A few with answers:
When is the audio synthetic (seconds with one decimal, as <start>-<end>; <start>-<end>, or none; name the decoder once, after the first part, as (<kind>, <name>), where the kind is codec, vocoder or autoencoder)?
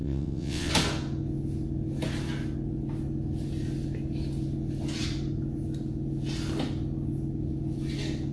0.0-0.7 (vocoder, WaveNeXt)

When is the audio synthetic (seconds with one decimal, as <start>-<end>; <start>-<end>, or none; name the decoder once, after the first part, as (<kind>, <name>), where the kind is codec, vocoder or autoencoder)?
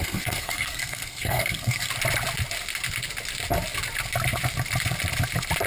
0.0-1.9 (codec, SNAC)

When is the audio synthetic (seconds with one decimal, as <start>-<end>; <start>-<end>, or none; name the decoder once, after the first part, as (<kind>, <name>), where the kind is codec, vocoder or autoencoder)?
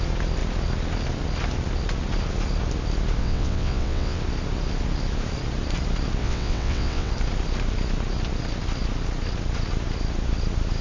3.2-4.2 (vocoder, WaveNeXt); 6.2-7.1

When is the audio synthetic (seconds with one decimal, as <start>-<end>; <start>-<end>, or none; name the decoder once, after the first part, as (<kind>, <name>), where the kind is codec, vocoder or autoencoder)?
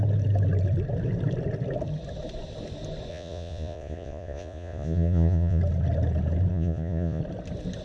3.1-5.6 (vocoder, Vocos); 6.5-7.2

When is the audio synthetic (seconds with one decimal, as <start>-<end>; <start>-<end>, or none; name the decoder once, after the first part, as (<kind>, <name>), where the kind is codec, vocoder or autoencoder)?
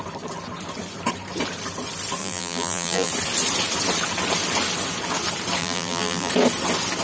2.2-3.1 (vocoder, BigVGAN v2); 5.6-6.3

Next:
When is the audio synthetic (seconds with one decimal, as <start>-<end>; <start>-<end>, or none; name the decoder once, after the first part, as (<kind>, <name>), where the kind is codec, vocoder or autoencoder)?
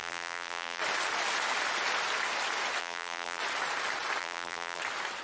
0.0-0.8 (vocoder, BigVGAN v2); 2.8-3.4; 4.2-4.8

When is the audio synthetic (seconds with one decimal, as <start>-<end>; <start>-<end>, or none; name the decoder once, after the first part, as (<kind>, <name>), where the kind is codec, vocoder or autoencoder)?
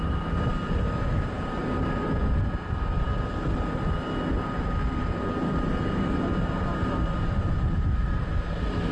none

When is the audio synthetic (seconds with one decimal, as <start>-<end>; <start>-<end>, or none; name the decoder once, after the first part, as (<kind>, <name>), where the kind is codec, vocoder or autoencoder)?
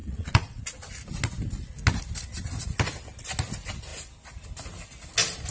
0.0-0.6 (vocoder, Vocos)